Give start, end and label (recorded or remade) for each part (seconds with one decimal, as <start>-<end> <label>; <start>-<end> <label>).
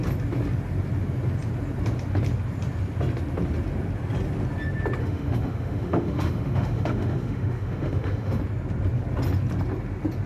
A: 0.0-5.0 recorded; 5.0-8.4 remade; 8.4-10.3 recorded